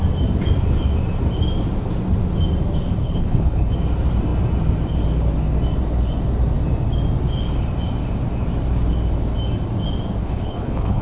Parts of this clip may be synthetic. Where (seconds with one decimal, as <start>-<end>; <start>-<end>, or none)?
3.0-3.7; 10.2-11.0